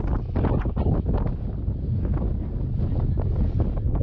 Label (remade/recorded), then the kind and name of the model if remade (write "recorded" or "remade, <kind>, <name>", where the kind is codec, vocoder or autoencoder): recorded